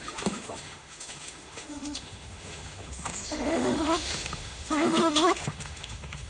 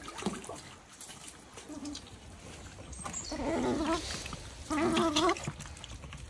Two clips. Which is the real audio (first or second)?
second